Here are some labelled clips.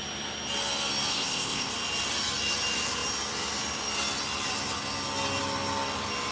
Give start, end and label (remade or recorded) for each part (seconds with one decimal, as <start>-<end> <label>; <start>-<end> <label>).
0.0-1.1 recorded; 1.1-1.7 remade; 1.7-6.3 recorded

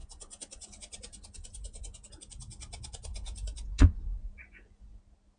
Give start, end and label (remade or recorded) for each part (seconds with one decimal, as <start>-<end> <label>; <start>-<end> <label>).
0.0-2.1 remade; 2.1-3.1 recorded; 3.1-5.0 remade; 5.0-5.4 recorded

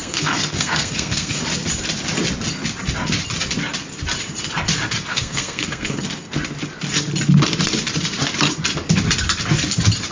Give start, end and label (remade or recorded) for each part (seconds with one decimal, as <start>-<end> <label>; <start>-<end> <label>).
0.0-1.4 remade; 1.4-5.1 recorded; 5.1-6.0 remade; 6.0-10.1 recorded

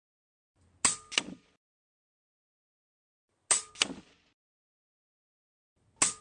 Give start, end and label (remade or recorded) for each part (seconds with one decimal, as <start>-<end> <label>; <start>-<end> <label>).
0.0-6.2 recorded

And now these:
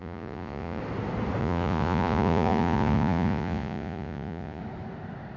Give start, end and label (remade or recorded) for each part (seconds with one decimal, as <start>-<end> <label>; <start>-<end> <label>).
0.0-0.8 remade; 0.8-1.4 recorded; 1.4-4.6 remade; 4.6-5.4 recorded

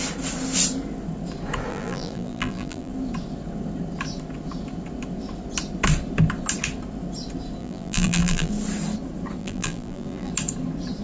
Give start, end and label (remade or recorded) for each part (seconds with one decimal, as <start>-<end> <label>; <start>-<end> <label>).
0.0-1.7 recorded; 1.7-2.9 remade; 2.9-7.6 recorded; 7.6-8.5 remade; 8.5-9.4 recorded; 9.4-10.3 remade; 10.3-11.0 recorded